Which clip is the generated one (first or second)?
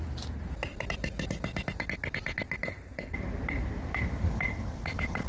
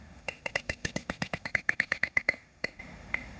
second